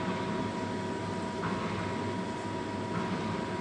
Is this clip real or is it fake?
real